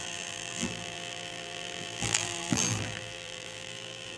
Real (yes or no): no